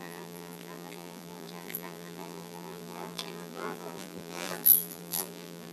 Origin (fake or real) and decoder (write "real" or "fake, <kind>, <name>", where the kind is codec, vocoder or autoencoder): fake, vocoder, BigVGAN v2